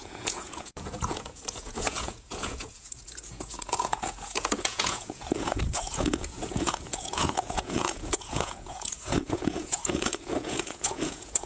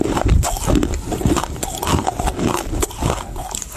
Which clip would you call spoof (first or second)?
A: first